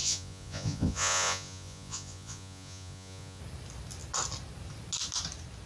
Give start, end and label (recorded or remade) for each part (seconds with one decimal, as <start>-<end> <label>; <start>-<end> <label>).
0.0-3.4 remade; 3.4-5.7 recorded